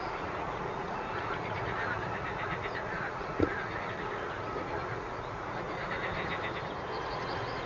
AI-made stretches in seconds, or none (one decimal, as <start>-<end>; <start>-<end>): 0.0-6.1; 7.0-7.7